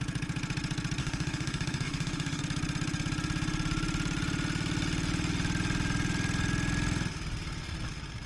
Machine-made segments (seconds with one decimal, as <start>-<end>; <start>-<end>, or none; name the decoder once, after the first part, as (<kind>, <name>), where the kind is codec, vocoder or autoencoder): 1.0-2.4 (autoencoder, DAC-VAE)